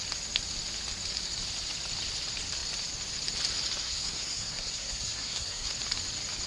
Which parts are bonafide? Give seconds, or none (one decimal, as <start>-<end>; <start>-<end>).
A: 0.0-3.8; 5.7-6.5